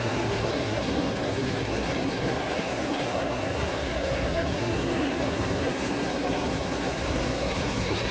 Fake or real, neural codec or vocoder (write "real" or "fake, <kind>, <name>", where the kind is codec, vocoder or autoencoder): fake, codec, SNAC